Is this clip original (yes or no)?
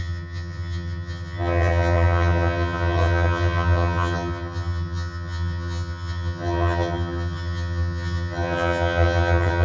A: no